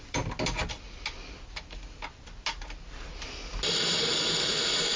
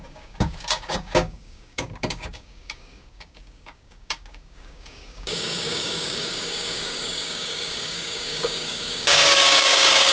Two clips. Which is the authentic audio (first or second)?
first